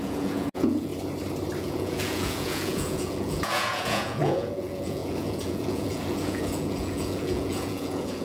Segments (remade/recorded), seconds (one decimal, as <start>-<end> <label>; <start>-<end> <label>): 0.0-0.9 remade; 0.9-1.6 recorded; 1.6-8.2 remade